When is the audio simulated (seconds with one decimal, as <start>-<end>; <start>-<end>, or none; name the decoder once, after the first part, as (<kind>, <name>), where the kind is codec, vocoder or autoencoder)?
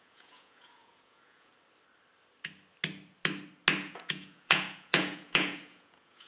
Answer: 0.0-1.5 (vocoder, Vocos); 3.8-6.3